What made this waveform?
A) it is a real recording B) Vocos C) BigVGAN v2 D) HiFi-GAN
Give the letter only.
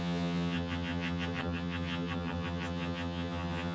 D